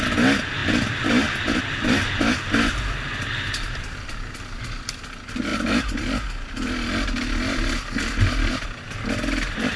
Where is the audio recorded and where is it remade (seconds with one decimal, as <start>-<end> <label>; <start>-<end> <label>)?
0.0-9.8 recorded